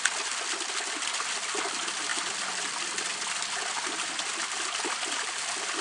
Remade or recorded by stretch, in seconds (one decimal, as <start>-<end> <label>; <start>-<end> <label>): 0.0-5.8 recorded